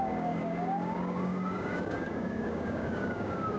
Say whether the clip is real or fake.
fake